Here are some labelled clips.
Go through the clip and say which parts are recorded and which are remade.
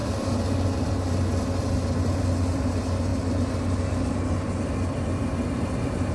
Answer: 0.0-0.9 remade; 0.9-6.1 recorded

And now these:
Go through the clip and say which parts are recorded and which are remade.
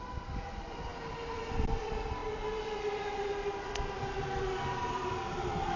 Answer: 0.0-5.8 recorded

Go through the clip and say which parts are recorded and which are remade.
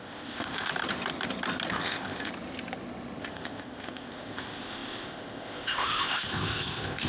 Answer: 0.0-0.7 remade; 0.7-1.7 recorded; 1.7-2.3 remade; 2.3-3.2 recorded; 3.2-7.1 remade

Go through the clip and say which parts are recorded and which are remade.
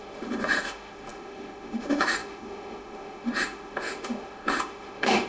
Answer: 0.0-5.3 remade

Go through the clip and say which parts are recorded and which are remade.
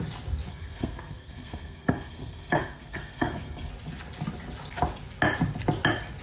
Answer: 0.0-0.5 recorded; 0.5-3.7 remade; 3.7-6.2 recorded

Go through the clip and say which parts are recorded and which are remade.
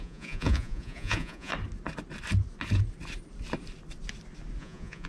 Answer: 0.0-1.5 remade; 1.5-4.6 recorded; 4.6-5.1 remade